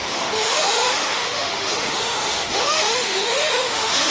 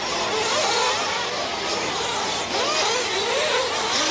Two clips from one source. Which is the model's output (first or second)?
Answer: first